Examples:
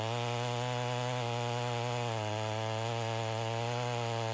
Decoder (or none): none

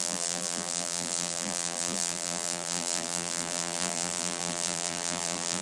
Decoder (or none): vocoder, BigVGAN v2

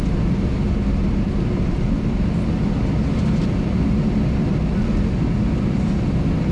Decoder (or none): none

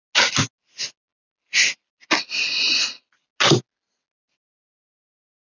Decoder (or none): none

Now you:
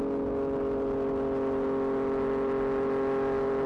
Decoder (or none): none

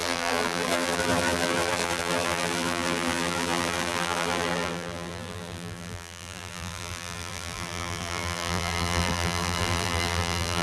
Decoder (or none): vocoder, BigVGAN v2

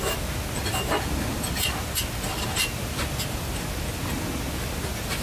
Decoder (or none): none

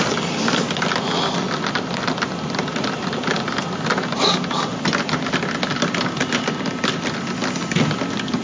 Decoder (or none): none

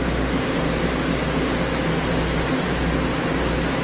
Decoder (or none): none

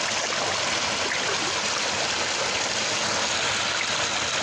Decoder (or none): none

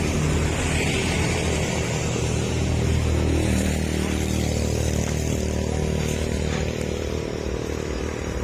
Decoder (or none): vocoder, BigVGAN v2